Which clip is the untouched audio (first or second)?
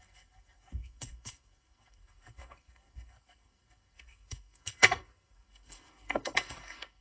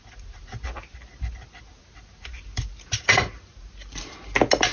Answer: second